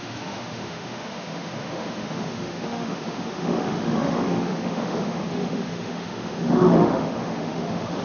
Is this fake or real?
fake